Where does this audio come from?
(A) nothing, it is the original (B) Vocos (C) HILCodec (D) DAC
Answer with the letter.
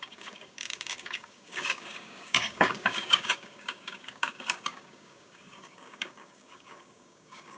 D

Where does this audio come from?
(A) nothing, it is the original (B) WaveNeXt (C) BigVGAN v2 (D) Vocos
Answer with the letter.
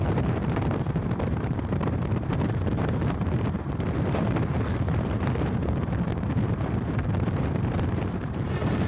C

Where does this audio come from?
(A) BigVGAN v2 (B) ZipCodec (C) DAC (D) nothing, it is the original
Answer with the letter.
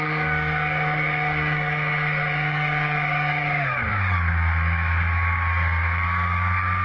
C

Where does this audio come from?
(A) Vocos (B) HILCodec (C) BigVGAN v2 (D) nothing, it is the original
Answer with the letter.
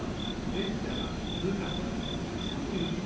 D